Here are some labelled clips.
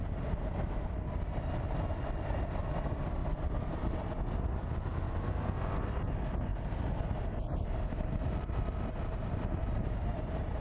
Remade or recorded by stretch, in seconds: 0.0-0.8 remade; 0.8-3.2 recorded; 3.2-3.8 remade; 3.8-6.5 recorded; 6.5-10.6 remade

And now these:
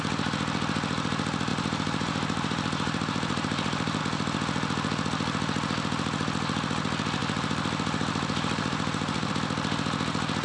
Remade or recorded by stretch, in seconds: 0.0-1.5 recorded; 1.5-4.0 remade; 4.0-7.2 recorded; 7.2-9.3 remade; 9.3-10.4 recorded

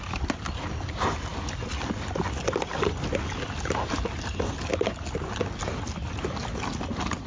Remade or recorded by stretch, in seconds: 0.0-7.3 recorded